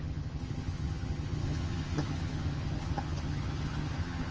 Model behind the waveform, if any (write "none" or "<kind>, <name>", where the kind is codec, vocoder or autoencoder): vocoder, HiFi-GAN